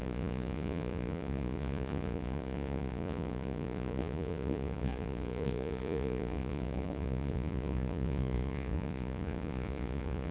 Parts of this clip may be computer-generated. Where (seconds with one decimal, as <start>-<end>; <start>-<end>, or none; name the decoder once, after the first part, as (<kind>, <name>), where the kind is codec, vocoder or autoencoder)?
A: 0.0-10.3 (vocoder, Vocos)